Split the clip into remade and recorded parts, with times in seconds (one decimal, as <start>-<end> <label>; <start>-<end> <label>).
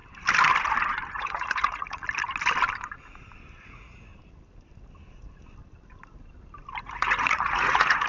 0.0-1.1 recorded; 1.1-2.0 remade; 2.0-3.6 recorded; 3.6-4.1 remade; 4.1-6.8 recorded; 6.8-8.1 remade